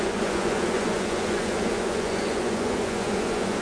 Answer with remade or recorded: remade